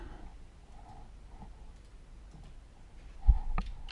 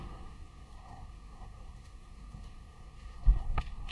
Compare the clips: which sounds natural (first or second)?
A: first